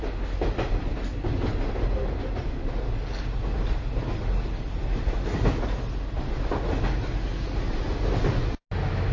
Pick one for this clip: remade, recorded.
recorded